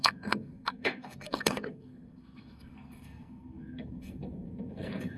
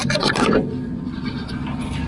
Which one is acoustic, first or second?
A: second